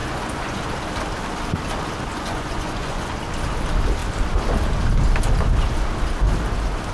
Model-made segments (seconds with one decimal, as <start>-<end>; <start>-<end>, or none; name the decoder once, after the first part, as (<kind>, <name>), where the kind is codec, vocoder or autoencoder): 0.0-0.6 (vocoder, Vocos); 2.1-3.1